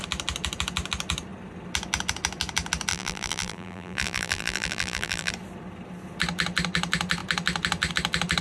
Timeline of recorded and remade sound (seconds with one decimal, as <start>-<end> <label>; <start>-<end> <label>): 0.0-2.9 recorded; 2.9-5.3 remade; 5.3-8.4 recorded